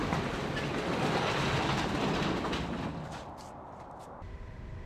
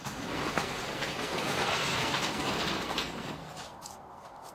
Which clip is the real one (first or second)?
first